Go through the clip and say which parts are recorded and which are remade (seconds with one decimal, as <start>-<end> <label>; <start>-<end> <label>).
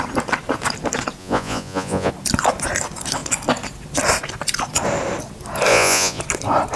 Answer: 0.0-1.2 recorded; 1.2-2.1 remade; 2.1-5.7 recorded; 5.7-6.2 remade; 6.2-6.8 recorded